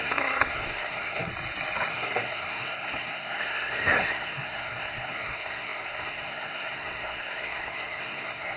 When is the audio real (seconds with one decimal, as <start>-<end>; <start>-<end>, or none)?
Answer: 1.3-1.9